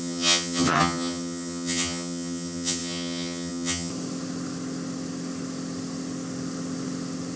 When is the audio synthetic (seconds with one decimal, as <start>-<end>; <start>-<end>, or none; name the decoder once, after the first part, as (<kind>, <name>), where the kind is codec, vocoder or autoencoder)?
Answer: 0.0-3.9 (vocoder, HiFi-GAN)